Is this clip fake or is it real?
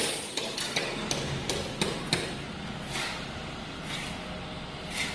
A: real